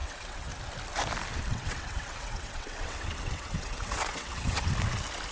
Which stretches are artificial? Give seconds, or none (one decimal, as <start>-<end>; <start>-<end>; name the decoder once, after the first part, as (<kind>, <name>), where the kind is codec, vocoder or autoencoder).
0.0-0.5 (vocoder, WaveNeXt); 1.5-4.7